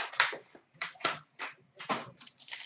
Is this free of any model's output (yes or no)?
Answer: yes